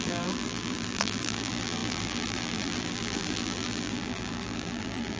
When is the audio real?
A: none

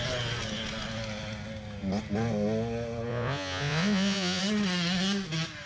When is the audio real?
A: 0.0-3.1; 4.4-5.7

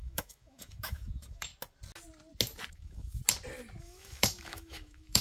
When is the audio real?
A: 1.5-2.7; 3.2-3.8

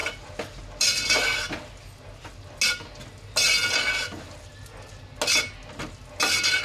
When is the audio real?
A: 0.0-6.6

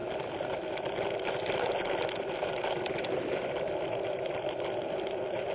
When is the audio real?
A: 0.0-5.5